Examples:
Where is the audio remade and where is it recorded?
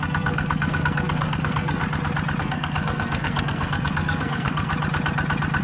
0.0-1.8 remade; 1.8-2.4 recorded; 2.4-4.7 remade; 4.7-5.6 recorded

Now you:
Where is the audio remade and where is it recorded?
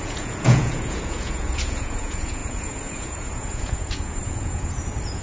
0.0-5.2 remade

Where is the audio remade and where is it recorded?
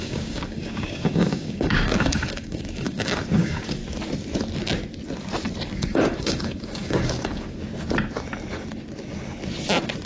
0.0-3.8 remade; 3.8-5.8 recorded; 5.8-7.6 remade; 7.6-10.1 recorded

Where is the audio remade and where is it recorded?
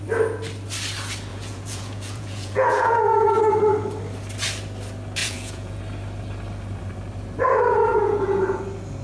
0.0-1.3 recorded; 1.3-3.3 remade; 3.3-5.2 recorded; 5.2-5.8 remade; 5.8-7.9 recorded; 7.9-8.6 remade; 8.6-9.0 recorded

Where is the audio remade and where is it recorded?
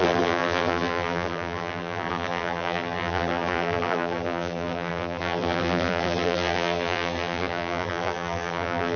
0.0-9.0 remade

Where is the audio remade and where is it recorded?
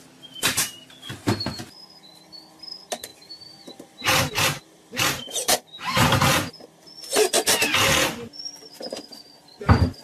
0.0-3.1 recorded; 3.1-6.2 remade; 6.2-10.0 recorded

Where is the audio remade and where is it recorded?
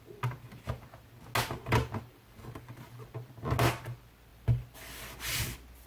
0.0-1.6 recorded; 1.6-3.3 remade; 3.3-4.3 recorded; 4.3-5.0 remade; 5.0-5.9 recorded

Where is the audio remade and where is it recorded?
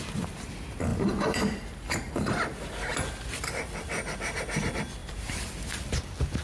0.0-0.9 recorded; 0.9-2.1 remade; 2.1-5.0 recorded; 5.0-5.5 remade; 5.5-6.4 recorded